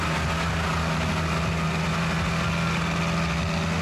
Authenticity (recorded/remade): recorded